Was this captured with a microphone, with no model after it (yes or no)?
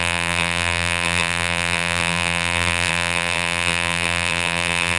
no